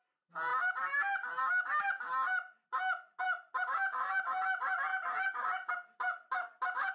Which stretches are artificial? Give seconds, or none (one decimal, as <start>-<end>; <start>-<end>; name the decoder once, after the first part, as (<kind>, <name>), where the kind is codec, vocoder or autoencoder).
none